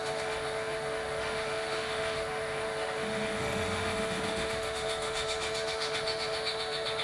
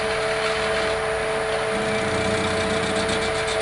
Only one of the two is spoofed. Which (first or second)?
first